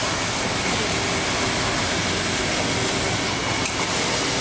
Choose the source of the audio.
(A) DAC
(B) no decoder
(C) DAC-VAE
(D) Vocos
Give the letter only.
B